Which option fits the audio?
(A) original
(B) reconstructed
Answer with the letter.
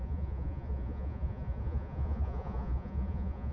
B